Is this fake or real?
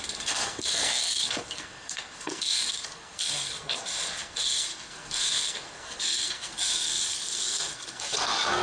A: fake